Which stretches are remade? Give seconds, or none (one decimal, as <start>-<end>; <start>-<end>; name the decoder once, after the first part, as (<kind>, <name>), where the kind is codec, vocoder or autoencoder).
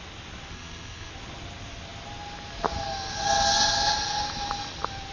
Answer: 0.5-1.1 (codec, SNAC)